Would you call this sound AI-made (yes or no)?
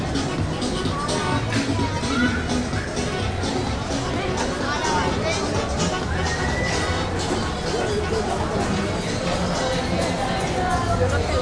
no